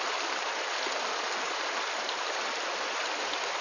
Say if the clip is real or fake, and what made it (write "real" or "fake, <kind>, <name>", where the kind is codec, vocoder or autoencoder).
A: real